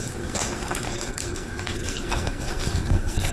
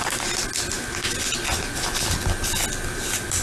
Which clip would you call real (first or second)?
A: second